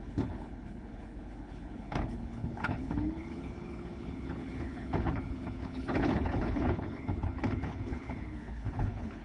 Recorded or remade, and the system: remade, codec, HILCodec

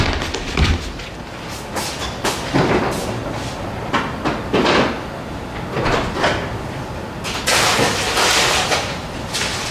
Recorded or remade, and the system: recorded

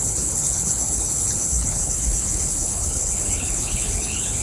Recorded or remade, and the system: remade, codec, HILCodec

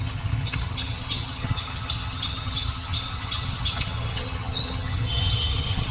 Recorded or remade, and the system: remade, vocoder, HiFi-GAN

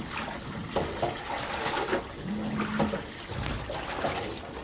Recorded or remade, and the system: recorded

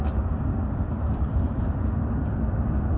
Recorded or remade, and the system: recorded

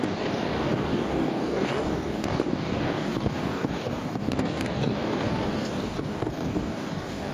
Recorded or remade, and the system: remade, codec, DAC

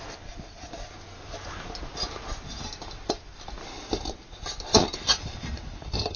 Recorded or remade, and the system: recorded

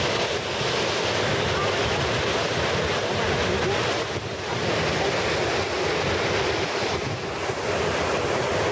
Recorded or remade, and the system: recorded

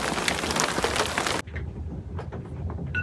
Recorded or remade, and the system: recorded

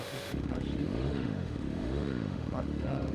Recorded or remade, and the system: remade, autoencoder, DAC-VAE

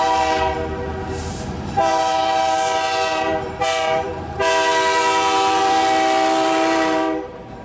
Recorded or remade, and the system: remade, vocoder, BigVGAN v2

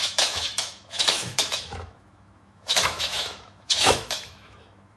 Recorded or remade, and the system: remade, autoencoder, DAC-VAE